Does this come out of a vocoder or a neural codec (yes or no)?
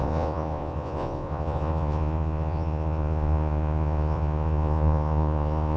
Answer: yes